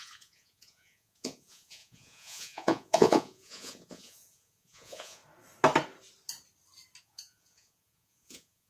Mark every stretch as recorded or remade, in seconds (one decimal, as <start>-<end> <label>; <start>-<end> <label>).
0.0-5.2 remade; 5.2-7.0 recorded; 7.0-8.7 remade